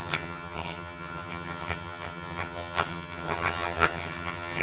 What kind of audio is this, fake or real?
fake